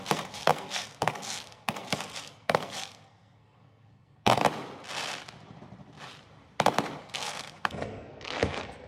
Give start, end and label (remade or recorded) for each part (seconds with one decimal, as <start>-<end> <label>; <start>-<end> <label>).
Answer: 0.0-4.4 remade; 4.4-7.0 recorded; 7.0-8.9 remade